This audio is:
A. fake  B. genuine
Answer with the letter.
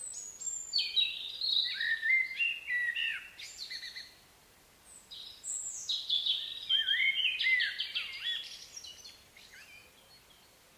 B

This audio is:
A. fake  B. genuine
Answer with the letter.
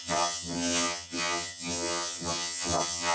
A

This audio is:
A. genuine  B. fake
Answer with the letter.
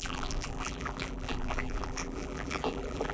B